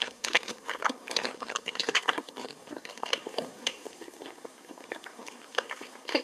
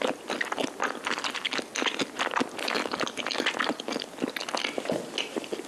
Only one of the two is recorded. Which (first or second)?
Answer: second